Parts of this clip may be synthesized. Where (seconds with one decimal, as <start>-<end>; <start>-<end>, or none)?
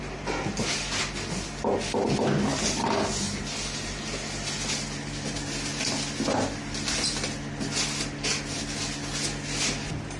none